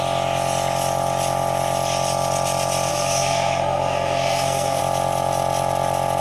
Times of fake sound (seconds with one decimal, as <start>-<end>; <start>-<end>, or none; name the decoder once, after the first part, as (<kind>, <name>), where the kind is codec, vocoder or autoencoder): 2.9-4.8 (codec, SNAC)